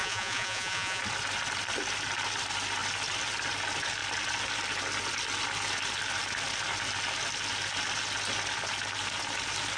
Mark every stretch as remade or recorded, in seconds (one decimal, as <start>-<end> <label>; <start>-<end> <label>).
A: 0.0-1.0 remade; 1.0-9.8 recorded